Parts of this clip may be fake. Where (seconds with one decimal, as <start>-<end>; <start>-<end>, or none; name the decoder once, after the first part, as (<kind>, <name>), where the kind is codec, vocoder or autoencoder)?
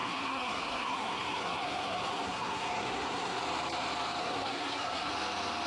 0.0-3.4 (codec, SNAC); 4.2-5.1